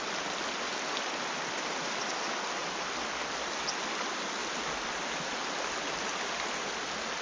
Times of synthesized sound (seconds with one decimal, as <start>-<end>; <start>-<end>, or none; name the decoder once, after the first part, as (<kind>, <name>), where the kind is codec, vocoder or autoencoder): none